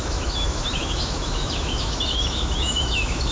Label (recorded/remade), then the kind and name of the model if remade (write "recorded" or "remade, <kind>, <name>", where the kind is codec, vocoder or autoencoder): remade, autoencoder, DAC-VAE